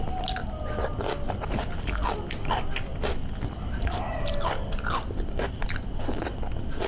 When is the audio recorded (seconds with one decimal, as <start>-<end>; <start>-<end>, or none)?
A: 0.0-6.9